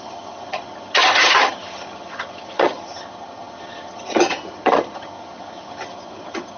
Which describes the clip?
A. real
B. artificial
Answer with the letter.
B